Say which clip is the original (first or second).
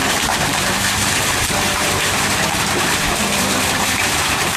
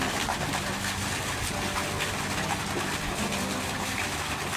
second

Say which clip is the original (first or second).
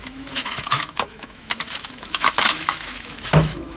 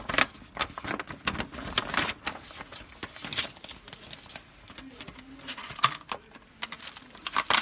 second